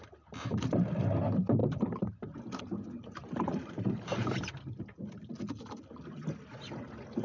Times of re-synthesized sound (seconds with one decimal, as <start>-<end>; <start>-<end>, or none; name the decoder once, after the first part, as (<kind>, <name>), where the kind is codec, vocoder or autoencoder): 1.6-2.6 (vocoder, BigVGAN v2); 3.2-4.7